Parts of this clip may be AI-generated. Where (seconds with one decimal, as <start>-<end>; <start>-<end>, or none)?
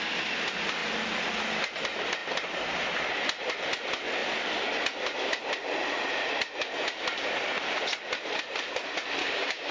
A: 9.2-9.7